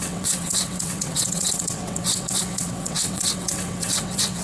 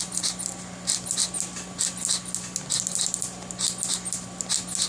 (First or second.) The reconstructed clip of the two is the first